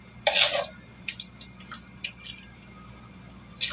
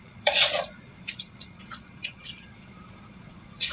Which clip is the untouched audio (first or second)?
first